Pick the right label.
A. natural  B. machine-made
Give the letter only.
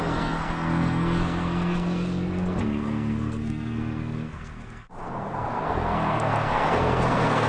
B